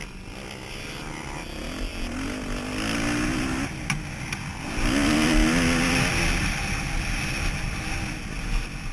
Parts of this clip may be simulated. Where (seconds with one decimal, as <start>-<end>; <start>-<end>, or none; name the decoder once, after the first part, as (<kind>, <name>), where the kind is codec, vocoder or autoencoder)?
none